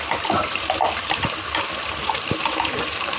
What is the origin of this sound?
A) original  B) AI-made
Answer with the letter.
B